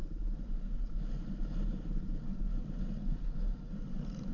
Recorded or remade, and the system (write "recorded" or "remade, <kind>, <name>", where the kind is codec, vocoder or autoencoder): recorded